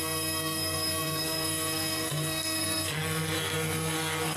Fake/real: fake